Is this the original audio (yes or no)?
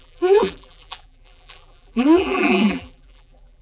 no